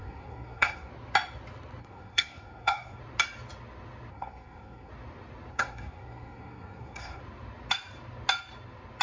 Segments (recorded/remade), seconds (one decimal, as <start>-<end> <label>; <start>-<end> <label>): 0.0-0.9 remade; 0.9-1.8 recorded; 1.8-3.0 remade; 3.0-4.1 recorded; 4.1-4.9 remade; 4.9-5.5 recorded; 5.5-7.2 remade; 7.2-9.0 recorded